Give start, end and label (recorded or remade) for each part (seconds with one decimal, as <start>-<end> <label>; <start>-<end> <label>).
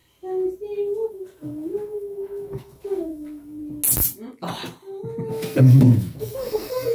0.0-1.1 recorded; 1.1-3.6 remade; 3.6-5.3 recorded; 5.3-6.9 remade